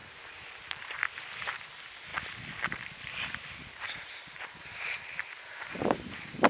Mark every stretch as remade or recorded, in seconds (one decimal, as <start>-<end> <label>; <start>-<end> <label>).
0.0-1.0 remade; 1.0-2.1 recorded; 2.1-6.0 remade; 6.0-6.5 recorded